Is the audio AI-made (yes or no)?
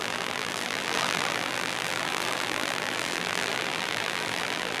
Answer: yes